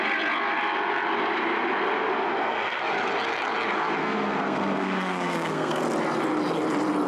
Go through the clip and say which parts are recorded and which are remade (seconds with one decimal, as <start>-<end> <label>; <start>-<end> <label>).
0.0-2.3 recorded; 2.3-2.8 remade; 2.8-4.0 recorded; 4.0-5.8 remade; 5.8-7.1 recorded